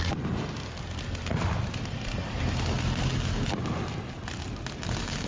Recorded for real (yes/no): yes